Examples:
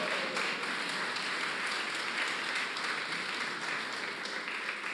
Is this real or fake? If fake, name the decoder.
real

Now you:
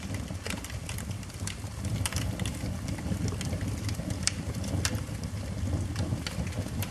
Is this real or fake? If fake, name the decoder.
real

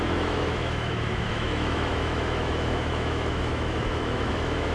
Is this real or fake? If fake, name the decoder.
fake, autoencoder, DAC-VAE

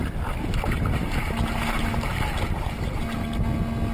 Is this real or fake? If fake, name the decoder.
real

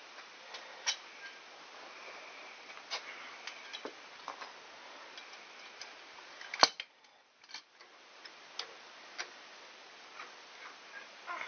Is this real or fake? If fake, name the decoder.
real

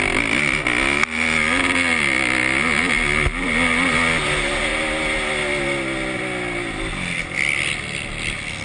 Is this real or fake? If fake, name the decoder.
real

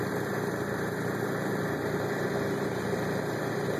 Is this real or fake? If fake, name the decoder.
real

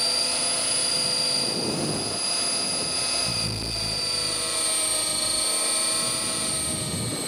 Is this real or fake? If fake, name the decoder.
real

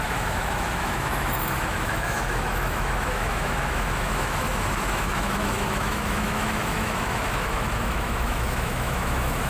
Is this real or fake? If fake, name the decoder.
fake, autoencoder, DAC-VAE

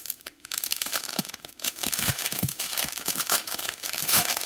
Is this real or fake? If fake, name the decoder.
fake, autoencoder, DAC-VAE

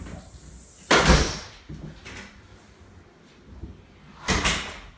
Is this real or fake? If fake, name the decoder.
real